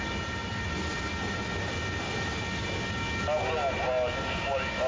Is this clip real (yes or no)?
yes